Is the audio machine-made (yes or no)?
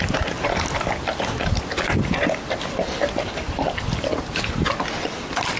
no